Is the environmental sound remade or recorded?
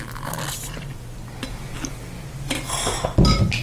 recorded